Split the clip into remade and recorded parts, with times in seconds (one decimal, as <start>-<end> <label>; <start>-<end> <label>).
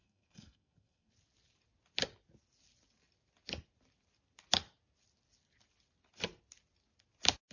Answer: 0.0-1.1 remade; 1.1-7.5 recorded